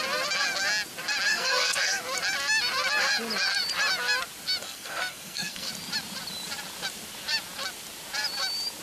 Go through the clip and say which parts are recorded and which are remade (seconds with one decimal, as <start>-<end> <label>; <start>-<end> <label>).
0.0-1.3 recorded; 1.3-2.0 remade; 2.0-4.6 recorded; 4.6-5.7 remade; 5.7-8.8 recorded